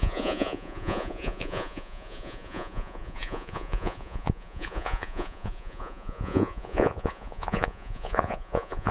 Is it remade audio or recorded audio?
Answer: remade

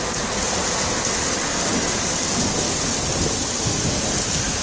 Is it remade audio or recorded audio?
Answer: recorded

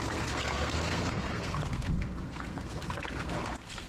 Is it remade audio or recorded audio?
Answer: remade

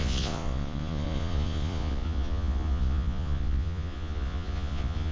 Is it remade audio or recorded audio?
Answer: remade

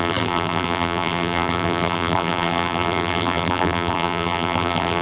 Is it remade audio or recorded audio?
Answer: remade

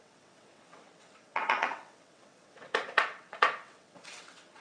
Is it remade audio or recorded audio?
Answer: remade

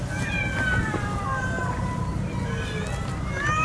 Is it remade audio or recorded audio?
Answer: recorded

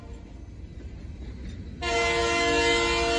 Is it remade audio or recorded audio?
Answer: recorded